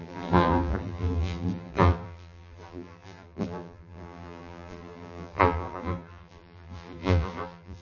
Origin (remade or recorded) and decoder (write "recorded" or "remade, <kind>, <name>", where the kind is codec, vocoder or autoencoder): remade, vocoder, BigVGAN v2